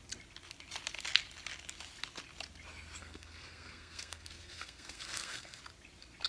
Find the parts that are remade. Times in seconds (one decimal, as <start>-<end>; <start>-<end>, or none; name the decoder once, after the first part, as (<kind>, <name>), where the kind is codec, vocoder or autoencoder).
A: 3.0-5.6 (codec, SNAC)